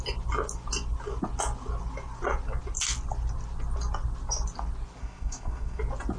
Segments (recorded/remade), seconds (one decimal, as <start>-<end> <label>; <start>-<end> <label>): 0.0-5.0 recorded; 5.0-5.8 remade; 5.8-6.2 recorded